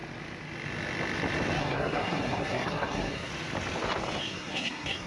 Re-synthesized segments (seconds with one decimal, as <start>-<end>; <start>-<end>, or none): 1.6-3.3; 4.2-5.1